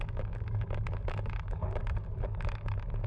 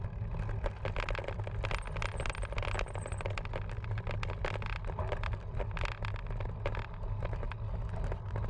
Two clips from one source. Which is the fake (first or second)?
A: first